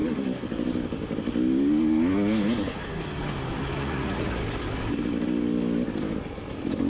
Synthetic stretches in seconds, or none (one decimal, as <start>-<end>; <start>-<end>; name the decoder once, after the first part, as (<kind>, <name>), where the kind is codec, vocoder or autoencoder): 3.8-4.4 (vocoder, Vocos)